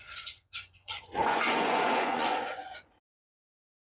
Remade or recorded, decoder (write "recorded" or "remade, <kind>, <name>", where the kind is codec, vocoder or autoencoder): remade, vocoder, Vocos